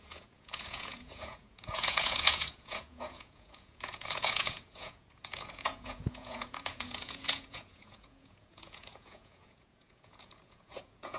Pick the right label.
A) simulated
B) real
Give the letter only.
A